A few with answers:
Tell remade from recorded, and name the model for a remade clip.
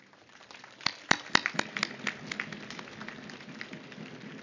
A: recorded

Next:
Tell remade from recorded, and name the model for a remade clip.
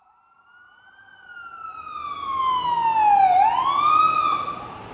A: recorded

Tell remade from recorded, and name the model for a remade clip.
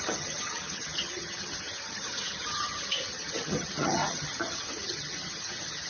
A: remade, vocoder, HiFi-GAN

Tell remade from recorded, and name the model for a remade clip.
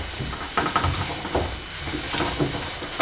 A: recorded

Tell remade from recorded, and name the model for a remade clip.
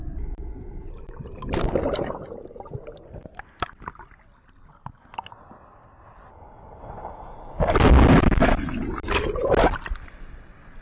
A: recorded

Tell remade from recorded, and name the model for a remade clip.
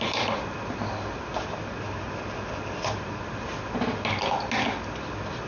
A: recorded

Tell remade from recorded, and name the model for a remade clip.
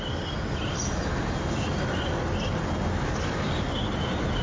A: recorded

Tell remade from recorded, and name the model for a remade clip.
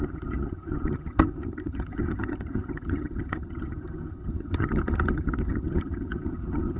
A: remade, vocoder, HiFi-GAN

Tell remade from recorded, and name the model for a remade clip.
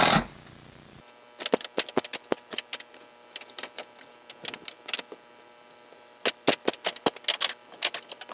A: recorded